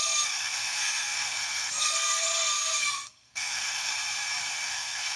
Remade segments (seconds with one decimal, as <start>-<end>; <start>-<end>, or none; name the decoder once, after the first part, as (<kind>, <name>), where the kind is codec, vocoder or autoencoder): 0.0-3.9 (codec, SNAC); 4.5-5.2